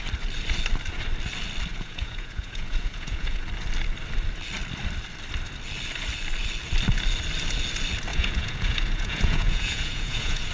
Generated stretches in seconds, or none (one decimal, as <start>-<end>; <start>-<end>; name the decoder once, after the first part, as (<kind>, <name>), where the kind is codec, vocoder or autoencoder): 1.7-3.4 (vocoder, Vocos); 8.1-10.5